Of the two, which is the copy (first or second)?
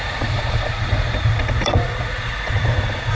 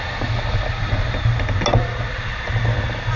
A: first